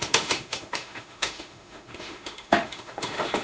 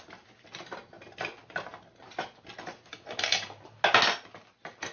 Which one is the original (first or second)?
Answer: second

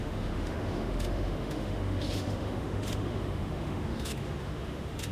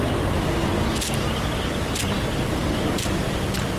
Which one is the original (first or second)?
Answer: second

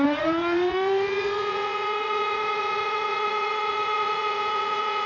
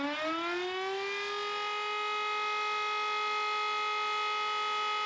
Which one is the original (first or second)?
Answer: second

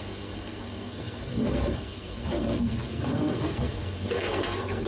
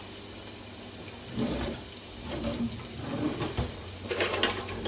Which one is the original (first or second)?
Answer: second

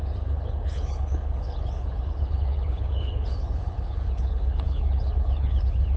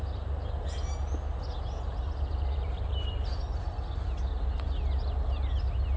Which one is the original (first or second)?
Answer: second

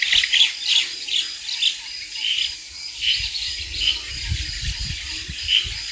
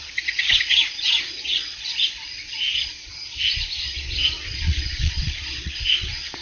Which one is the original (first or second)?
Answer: first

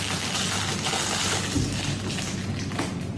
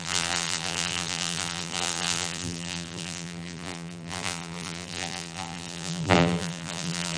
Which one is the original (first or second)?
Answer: first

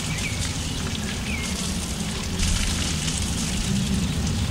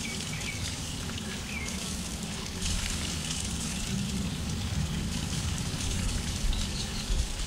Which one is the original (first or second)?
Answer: first